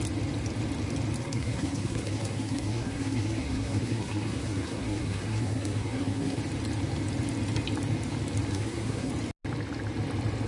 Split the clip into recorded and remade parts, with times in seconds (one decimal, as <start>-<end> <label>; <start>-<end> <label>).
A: 0.0-1.2 recorded; 1.2-6.4 remade; 6.4-8.5 recorded; 8.5-9.1 remade; 9.1-10.5 recorded